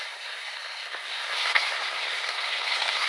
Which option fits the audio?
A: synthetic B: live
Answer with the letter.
A